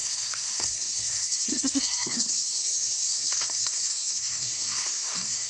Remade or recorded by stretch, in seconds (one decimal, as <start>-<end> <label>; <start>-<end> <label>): 0.0-5.5 remade

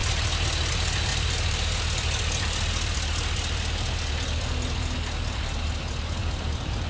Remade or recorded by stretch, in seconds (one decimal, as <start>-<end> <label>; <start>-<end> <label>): 0.0-1.1 recorded; 1.1-1.8 remade; 1.8-6.2 recorded; 6.2-6.9 remade

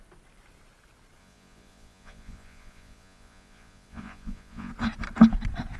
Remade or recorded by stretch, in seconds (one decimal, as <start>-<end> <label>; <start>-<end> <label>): 0.0-1.2 recorded; 1.2-4.7 remade; 4.7-5.8 recorded

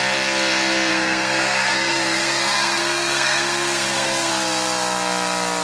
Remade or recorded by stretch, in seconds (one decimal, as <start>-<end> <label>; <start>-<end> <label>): 0.0-0.9 recorded; 0.9-4.3 remade; 4.3-5.6 recorded

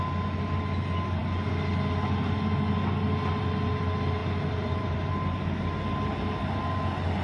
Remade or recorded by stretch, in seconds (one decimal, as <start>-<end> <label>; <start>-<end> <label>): 0.0-4.2 recorded; 4.2-5.1 remade; 5.1-7.2 recorded

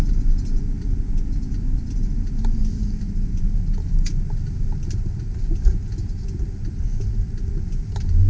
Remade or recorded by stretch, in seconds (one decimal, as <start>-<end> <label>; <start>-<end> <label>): 0.0-8.3 recorded

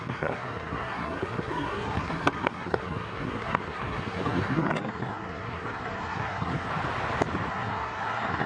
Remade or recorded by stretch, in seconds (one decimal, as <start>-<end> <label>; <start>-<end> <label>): 0.0-6.7 remade; 6.7-7.5 recorded; 7.5-8.5 remade

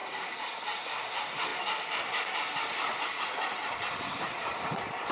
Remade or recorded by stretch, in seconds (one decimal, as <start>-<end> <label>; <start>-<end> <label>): 0.0-1.5 recorded; 1.5-4.6 remade; 4.6-5.1 recorded